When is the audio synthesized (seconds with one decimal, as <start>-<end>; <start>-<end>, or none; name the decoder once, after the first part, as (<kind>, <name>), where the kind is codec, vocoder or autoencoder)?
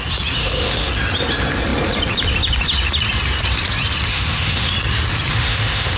0.4-0.9 (autoencoder, DAC-VAE); 4.1-4.7; 5.3-6.0